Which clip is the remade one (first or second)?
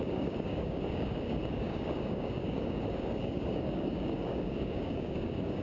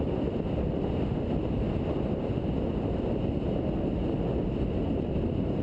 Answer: first